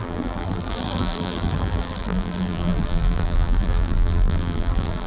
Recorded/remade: remade